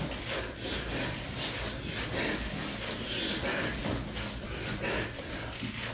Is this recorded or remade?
recorded